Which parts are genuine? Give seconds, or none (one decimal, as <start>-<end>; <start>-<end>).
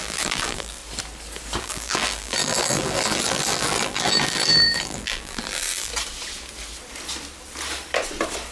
0.8-1.6; 5.9-8.5